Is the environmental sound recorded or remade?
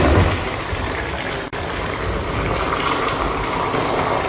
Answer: remade